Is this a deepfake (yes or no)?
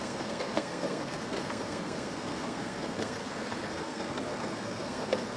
yes